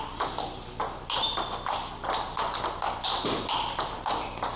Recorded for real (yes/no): yes